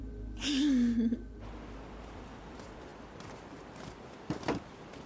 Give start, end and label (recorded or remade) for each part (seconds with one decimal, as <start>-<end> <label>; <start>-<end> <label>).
0.0-0.4 remade; 0.4-2.0 recorded; 2.0-2.9 remade; 2.9-4.1 recorded; 4.1-5.1 remade